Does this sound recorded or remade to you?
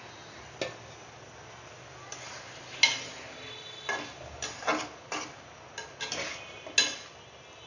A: recorded